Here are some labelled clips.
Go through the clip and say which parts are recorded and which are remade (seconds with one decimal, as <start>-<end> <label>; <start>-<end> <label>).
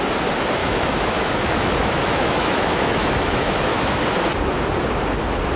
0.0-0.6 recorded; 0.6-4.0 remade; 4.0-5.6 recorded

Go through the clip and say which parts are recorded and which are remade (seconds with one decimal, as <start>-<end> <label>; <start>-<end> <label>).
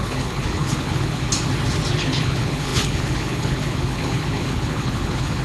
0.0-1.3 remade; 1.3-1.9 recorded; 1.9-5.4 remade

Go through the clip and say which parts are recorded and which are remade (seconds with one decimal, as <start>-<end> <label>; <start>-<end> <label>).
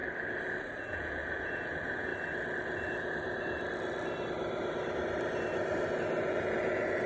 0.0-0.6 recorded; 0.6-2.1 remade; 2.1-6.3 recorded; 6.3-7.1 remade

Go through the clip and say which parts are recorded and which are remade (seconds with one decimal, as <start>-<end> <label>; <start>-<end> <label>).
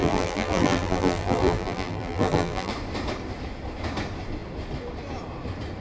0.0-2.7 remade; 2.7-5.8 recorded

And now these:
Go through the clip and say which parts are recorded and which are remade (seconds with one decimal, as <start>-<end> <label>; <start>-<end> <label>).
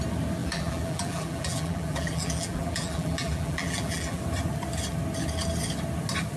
0.0-0.4 recorded; 0.4-4.2 remade; 4.2-6.4 recorded